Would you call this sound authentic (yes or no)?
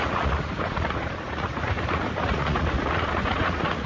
no